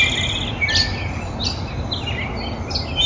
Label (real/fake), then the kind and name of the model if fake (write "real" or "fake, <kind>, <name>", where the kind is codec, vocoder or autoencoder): real